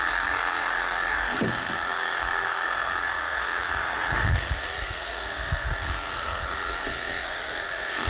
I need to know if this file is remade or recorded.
remade